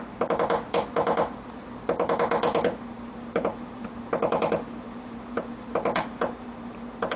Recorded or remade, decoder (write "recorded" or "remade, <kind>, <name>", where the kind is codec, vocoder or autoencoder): remade, vocoder, BigVGAN v2